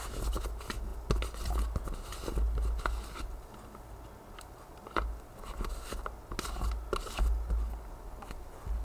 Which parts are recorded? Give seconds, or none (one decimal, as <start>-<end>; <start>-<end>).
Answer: 0.0-8.8